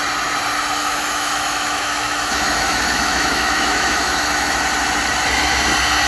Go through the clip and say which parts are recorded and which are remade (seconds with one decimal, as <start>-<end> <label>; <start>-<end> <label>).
0.0-0.8 recorded; 0.8-4.5 remade; 4.5-6.1 recorded